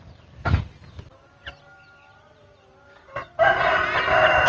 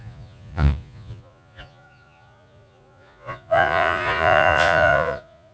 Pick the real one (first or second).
first